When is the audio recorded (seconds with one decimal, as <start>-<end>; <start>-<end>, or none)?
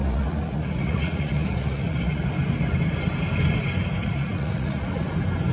2.3-4.0; 5.1-5.5